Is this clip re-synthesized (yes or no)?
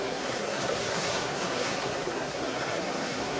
yes